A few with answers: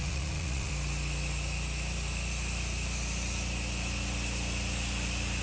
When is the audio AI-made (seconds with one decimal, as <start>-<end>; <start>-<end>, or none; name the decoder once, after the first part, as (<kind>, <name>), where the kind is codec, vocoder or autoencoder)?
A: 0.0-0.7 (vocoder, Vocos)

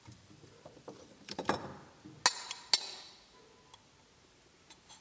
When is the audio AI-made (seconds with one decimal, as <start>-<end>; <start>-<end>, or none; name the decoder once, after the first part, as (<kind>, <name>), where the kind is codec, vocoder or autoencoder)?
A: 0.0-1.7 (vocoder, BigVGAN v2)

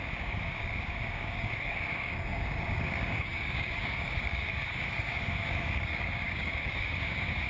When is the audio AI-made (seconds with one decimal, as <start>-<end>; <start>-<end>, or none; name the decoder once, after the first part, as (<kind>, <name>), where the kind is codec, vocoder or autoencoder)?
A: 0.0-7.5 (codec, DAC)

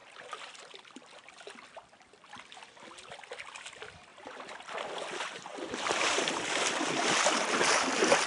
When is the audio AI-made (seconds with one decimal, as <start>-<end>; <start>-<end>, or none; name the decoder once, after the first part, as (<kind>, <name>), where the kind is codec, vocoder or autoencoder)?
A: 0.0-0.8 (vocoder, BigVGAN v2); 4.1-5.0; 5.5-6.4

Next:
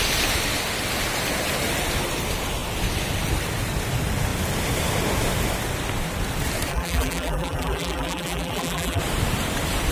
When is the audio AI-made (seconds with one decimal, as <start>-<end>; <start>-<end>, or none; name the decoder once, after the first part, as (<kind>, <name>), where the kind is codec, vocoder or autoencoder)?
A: 6.7-9.0 (vocoder, BigVGAN v2)